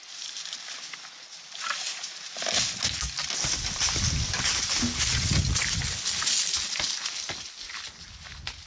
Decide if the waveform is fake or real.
real